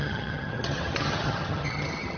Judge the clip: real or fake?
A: fake